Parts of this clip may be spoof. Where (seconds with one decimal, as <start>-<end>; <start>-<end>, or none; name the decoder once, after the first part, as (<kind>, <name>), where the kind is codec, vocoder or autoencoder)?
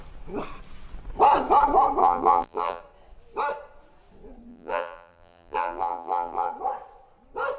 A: 2.0-2.8 (vocoder, BigVGAN v2); 4.5-6.5